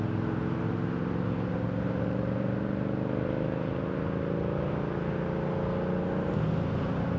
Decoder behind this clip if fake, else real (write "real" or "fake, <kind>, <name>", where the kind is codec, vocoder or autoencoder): real